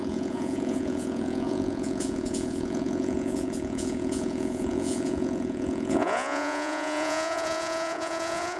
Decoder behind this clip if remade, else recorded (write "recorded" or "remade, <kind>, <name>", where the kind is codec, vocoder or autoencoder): remade, vocoder, Vocos